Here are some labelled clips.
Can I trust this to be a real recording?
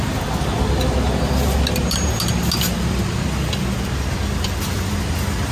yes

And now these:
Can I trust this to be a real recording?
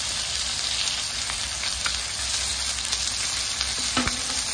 yes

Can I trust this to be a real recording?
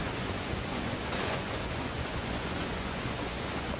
no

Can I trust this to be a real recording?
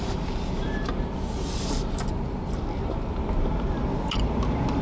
yes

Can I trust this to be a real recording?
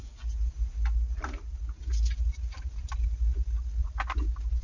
yes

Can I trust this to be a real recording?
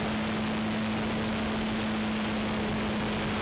yes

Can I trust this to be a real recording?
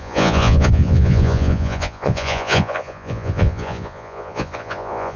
no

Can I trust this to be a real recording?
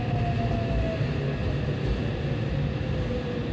yes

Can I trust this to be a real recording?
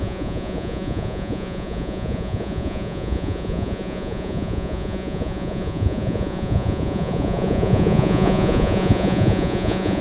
no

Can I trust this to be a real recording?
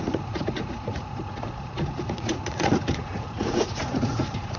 no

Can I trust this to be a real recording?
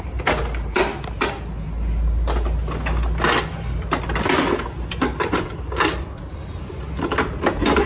yes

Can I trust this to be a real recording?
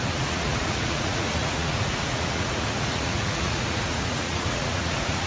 no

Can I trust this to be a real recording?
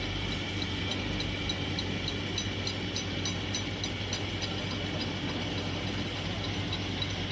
yes